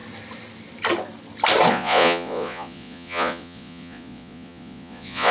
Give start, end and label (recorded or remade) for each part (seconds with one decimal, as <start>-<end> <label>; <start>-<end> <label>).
0.0-1.7 recorded; 1.7-5.3 remade